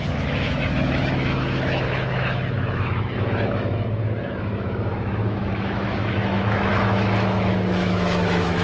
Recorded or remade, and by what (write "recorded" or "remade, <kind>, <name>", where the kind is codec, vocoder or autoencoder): remade, autoencoder, DAC-VAE